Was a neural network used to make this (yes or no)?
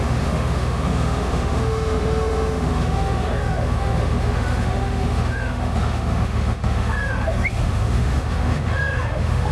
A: yes